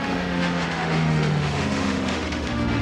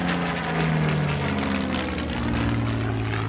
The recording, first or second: second